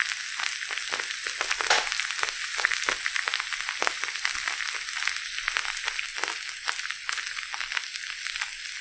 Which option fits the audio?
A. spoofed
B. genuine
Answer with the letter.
B